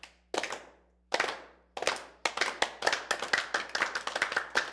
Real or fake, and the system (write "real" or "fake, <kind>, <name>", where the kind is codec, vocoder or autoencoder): real